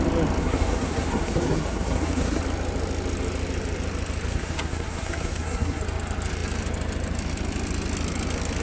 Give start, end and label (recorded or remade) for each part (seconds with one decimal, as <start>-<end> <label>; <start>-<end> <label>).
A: 0.0-0.4 recorded; 0.4-2.4 remade; 2.4-4.3 recorded; 4.3-5.8 remade; 5.8-8.6 recorded